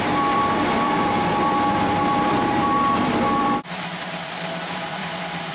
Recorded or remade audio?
remade